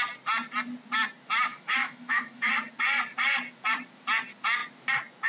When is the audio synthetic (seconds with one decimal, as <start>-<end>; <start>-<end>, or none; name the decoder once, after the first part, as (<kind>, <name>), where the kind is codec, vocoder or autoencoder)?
1.5-2.5 (autoencoder, DAC-VAE)